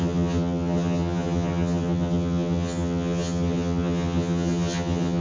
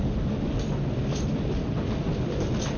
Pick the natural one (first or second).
second